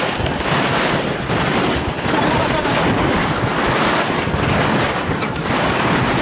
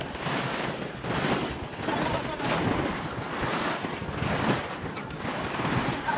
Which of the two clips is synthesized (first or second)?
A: first